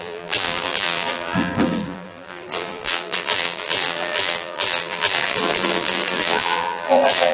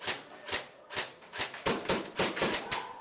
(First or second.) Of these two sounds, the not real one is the first